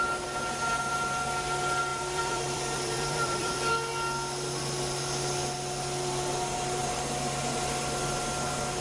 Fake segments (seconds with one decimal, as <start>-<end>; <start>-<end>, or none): 1.9-3.7